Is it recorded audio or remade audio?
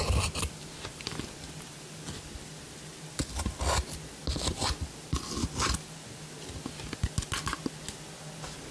recorded